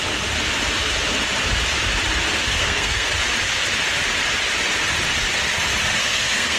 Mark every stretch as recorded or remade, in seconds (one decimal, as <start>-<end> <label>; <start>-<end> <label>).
0.0-2.4 recorded; 2.4-3.1 remade; 3.1-6.0 recorded; 6.0-6.6 remade